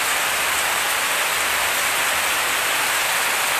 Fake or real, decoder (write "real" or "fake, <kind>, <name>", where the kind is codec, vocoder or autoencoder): real